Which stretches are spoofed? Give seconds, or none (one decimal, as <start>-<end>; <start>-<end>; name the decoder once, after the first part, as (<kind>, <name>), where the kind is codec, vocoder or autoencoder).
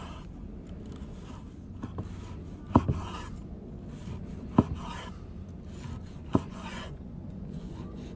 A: 6.3-8.2 (vocoder, Vocos)